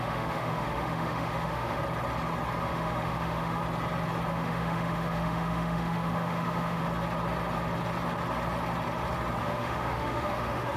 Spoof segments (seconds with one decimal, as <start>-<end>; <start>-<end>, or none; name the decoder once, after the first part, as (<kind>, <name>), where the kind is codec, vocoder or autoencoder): 0.0-1.8 (autoencoder, DAC-VAE); 2.6-3.6; 4.3-6.8; 9.4-10.8